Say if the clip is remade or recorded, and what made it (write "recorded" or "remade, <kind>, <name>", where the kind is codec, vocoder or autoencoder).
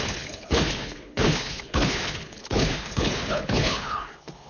remade, codec, HILCodec